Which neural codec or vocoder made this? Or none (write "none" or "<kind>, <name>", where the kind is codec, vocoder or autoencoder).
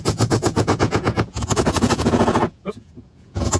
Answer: vocoder, Vocos